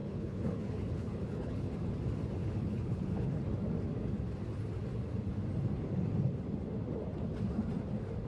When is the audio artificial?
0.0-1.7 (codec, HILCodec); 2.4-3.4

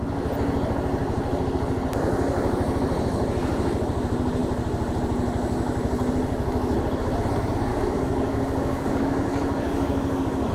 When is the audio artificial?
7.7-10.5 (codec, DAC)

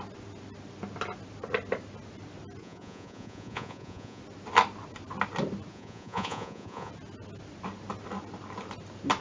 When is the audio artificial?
2.6-4.2 (vocoder, Vocos); 5.7-6.9

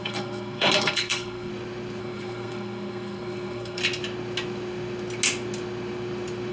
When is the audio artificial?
0.0-1.5 (codec, SNAC); 2.0-3.8